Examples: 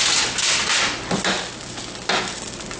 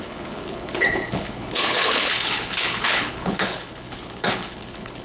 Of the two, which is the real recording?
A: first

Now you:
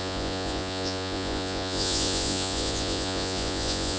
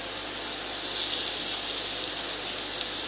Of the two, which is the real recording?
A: second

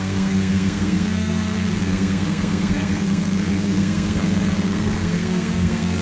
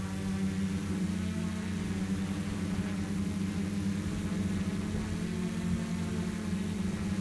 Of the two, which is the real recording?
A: second